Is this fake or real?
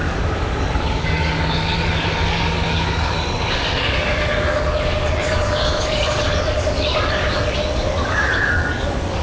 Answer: fake